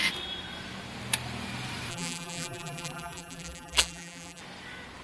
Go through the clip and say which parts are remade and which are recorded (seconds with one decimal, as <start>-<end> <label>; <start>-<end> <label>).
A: 0.0-1.9 recorded; 1.9-4.4 remade; 4.4-5.0 recorded